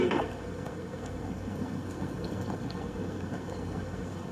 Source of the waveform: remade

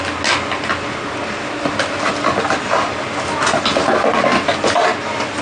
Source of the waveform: recorded